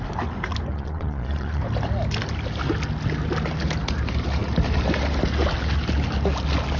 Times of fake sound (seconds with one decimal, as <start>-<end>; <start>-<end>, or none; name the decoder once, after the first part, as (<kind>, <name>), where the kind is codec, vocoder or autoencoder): 0.7-1.6 (vocoder, Vocos)

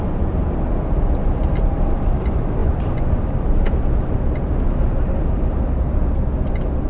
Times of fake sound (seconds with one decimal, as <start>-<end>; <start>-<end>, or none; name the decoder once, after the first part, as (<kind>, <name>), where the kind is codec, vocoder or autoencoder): 2.6-3.2 (vocoder, Vocos)

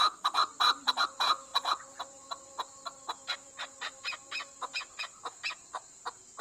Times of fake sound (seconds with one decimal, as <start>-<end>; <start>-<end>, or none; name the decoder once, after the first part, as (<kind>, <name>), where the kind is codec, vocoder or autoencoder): 0.0-0.4 (vocoder, Vocos); 1.1-6.4

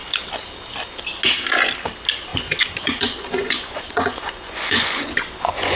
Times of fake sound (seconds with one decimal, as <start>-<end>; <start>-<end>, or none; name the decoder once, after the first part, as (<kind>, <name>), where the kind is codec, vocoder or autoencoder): 2.3-5.8 (vocoder, Vocos)

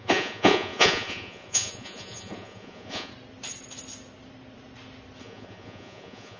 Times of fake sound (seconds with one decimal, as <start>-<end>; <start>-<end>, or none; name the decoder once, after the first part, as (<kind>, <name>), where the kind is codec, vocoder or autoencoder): 0.0-3.1 (vocoder, Vocos); 5.2-6.4

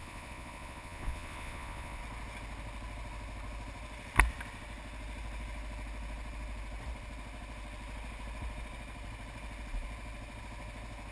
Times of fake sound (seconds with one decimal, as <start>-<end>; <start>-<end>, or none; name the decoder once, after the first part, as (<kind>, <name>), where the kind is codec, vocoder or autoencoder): 0.0-2.0 (vocoder, Vocos)